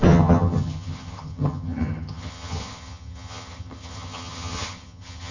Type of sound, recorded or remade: remade